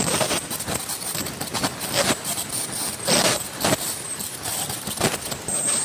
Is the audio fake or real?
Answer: real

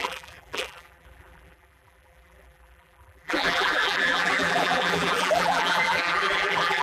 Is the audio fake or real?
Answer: fake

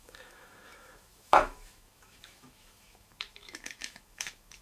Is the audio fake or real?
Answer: fake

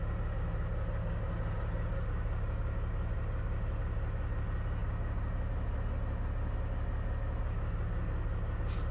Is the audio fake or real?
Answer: real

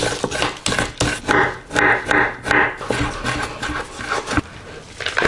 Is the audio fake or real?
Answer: real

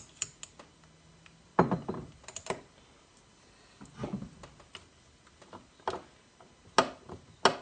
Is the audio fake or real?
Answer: real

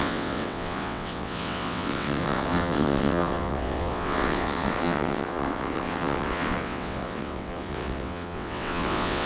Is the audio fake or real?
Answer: fake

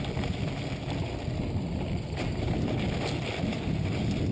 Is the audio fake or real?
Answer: real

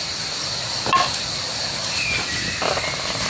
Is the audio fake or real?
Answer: real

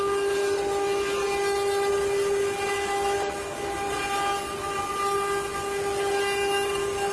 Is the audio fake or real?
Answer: real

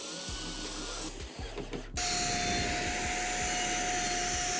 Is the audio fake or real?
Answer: real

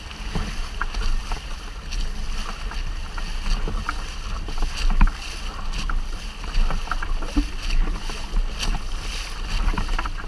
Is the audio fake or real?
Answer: real